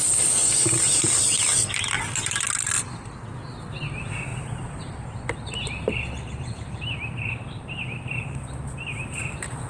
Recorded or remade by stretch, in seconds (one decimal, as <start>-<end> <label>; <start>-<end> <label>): 0.0-4.3 recorded; 4.3-9.7 remade